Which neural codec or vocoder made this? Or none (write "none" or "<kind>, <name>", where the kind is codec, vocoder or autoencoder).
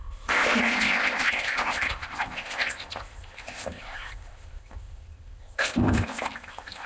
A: codec, ZipCodec